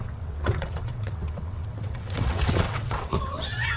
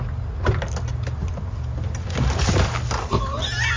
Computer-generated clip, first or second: first